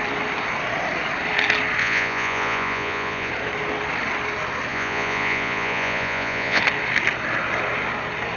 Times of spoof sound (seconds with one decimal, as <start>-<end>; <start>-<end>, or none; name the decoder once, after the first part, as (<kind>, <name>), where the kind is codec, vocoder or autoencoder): 1.8-3.3 (vocoder, Vocos); 4.7-6.6

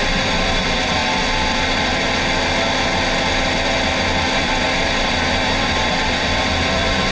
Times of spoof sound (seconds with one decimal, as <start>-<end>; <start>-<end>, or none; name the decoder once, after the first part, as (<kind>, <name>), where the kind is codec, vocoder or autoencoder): 0.0-1.0 (vocoder, BigVGAN v2); 1.5-1.9; 4.4-7.1

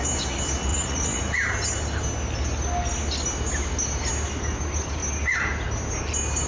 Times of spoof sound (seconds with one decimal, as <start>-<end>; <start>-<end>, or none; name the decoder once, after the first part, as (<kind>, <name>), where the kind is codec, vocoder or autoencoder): 0.7-1.2 (vocoder, Vocos)

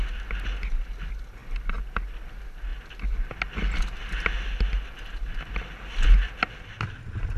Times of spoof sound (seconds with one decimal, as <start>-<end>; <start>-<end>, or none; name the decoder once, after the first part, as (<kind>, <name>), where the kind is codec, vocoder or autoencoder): none

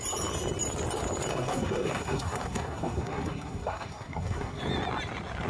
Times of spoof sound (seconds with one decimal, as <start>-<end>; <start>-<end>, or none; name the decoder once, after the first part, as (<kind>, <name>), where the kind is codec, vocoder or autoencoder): 1.3-4.6 (codec, SNAC)

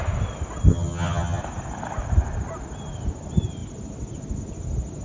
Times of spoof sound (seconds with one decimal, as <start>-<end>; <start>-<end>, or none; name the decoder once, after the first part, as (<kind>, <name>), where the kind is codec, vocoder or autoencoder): 0.7-1.4 (vocoder, HiFi-GAN)

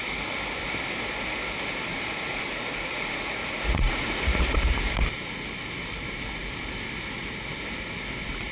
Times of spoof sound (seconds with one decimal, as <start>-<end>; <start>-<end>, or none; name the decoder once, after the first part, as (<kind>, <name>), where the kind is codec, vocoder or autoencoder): 1.9-4.4 (vocoder, Vocos)